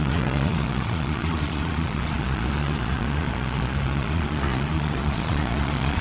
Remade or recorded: remade